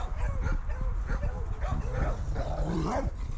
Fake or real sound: real